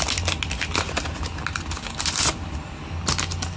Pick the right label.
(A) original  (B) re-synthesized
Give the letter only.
A